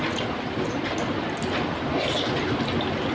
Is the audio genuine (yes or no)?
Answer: yes